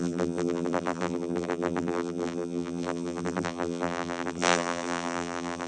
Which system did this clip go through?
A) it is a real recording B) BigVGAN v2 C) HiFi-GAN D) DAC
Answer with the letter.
B